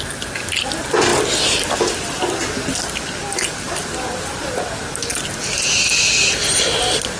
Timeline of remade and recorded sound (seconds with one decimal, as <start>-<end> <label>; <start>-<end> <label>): 0.0-7.2 recorded

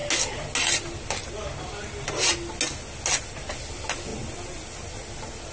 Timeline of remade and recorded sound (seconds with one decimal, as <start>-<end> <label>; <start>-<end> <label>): 0.0-5.5 recorded

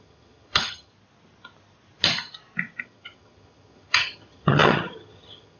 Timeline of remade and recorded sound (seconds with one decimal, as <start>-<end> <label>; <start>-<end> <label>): 0.0-0.9 remade; 0.9-2.8 recorded; 2.8-5.6 remade

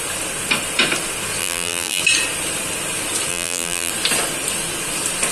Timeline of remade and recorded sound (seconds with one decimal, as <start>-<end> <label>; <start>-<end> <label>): 0.0-1.4 recorded; 1.4-2.0 remade; 2.0-3.3 recorded; 3.3-3.9 remade; 3.9-5.3 recorded

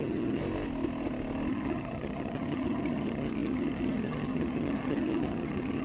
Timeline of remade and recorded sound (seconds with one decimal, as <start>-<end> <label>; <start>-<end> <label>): 0.0-0.4 remade; 0.4-1.5 recorded; 1.5-5.8 remade

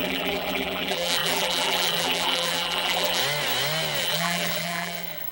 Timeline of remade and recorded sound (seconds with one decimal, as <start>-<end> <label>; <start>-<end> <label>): 0.0-3.2 remade; 3.2-4.0 recorded; 4.0-5.3 remade

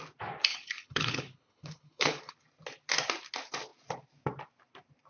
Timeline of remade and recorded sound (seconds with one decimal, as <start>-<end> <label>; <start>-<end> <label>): 0.0-0.5 recorded; 0.5-2.3 remade; 2.3-5.1 recorded